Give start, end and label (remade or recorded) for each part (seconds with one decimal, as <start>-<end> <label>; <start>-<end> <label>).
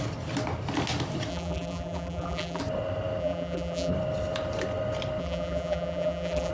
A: 0.0-1.3 recorded; 1.3-2.6 remade; 2.6-3.2 recorded; 3.2-3.9 remade; 3.9-5.2 recorded; 5.2-6.5 remade